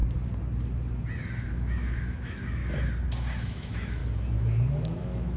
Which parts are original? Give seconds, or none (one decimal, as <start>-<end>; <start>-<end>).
0.0-1.5; 2.6-3.4; 4.0-4.7